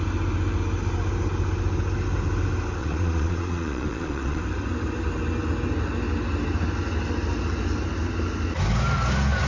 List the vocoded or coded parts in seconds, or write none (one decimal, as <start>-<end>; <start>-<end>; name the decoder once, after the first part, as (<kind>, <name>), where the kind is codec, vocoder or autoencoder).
2.8-4.4 (vocoder, Vocos)